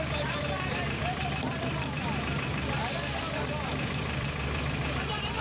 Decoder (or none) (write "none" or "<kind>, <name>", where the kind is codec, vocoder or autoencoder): vocoder, BigVGAN v2